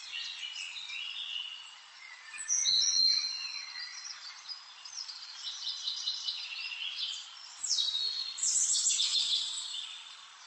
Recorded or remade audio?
remade